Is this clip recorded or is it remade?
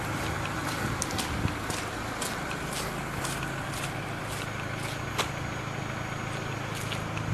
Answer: recorded